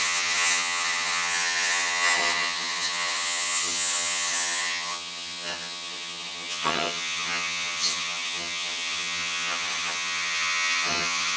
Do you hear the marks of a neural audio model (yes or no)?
yes